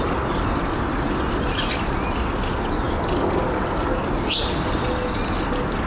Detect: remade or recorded recorded